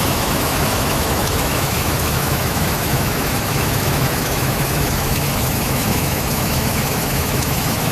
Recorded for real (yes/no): no